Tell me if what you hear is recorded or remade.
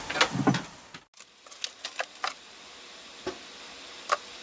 recorded